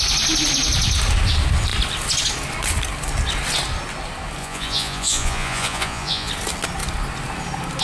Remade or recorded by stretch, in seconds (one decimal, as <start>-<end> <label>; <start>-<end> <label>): 0.0-4.4 recorded; 4.4-6.3 remade; 6.3-7.8 recorded